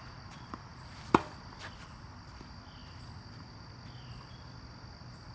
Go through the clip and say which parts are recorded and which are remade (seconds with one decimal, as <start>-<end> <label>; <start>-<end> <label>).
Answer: 0.0-0.7 recorded; 0.7-2.4 remade; 2.4-5.3 recorded